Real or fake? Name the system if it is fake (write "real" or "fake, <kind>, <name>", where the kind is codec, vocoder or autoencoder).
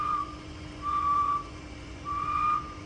fake, vocoder, Vocos